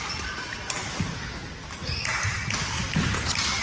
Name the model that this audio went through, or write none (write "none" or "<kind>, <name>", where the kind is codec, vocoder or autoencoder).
none